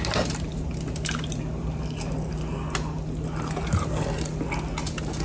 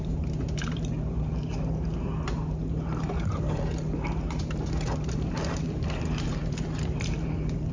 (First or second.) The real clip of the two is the first